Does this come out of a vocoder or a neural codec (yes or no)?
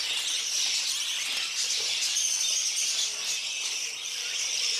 no